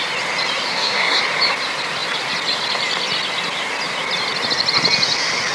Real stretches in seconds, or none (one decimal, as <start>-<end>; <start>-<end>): 0.0-0.7; 1.2-5.5